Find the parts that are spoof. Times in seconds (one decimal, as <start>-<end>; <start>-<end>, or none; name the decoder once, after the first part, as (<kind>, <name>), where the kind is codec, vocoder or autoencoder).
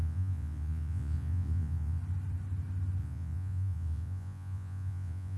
0.0-2.0 (vocoder, Vocos); 3.0-5.4